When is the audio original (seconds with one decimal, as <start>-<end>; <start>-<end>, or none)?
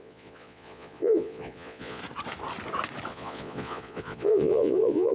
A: 2.0-3.1